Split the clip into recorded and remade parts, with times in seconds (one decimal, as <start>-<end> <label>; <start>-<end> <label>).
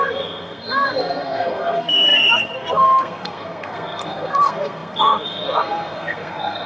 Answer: 0.0-6.7 remade